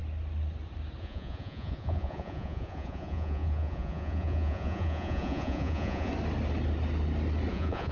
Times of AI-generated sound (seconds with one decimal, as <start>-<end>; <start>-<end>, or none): 1.0-6.1; 7.5-7.9